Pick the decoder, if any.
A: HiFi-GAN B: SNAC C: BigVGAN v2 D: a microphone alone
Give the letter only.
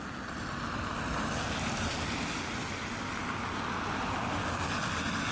D